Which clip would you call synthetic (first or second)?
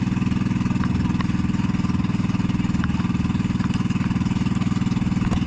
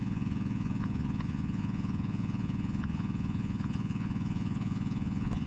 second